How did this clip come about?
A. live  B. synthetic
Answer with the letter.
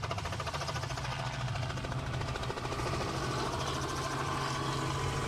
A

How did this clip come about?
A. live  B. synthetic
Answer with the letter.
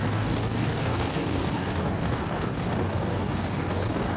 B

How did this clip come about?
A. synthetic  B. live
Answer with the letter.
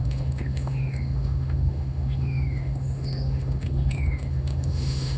A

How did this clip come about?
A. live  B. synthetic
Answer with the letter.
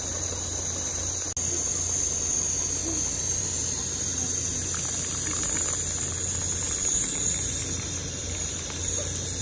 A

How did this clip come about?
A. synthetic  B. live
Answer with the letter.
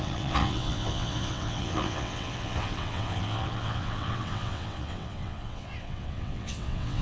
A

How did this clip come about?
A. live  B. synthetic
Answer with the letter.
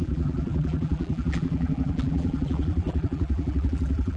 B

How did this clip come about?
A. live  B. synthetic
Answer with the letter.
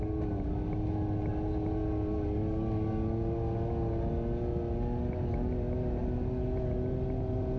A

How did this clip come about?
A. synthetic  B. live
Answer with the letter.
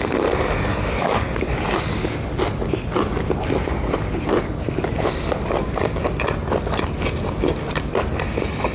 B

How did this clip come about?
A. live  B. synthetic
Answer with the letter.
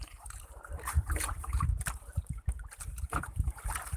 B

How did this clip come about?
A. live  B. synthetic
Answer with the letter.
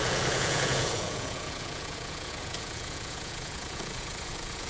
B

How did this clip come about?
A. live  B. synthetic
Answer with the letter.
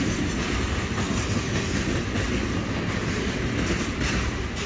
A